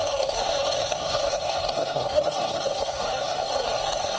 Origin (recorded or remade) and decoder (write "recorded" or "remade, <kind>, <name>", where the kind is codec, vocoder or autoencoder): remade, codec, SNAC